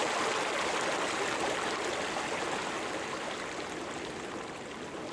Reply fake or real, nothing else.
real